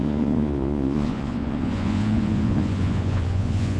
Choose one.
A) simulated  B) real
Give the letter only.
A